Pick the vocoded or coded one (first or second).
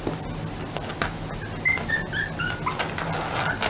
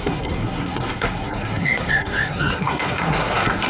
second